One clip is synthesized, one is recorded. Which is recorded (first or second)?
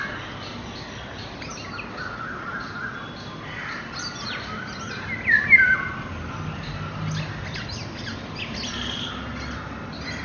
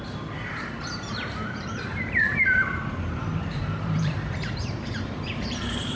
first